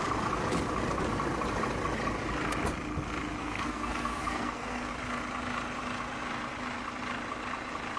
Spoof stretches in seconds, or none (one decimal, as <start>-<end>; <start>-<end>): 3.4-4.9